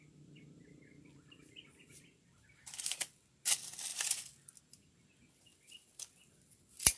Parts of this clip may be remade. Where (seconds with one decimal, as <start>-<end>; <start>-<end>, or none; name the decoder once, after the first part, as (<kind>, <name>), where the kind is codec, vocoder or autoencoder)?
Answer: none